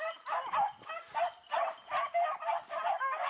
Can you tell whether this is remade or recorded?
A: recorded